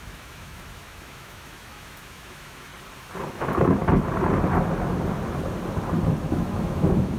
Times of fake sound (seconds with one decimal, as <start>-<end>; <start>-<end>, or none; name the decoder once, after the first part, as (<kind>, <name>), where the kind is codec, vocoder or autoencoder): 0.0-2.7 (autoencoder, DAC-VAE); 3.3-3.8; 6.3-7.2

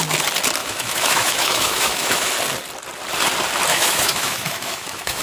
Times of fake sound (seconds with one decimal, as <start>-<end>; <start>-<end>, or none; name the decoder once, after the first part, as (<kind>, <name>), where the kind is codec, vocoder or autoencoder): 0.6-2.3 (autoencoder, DAC-VAE); 3.7-5.2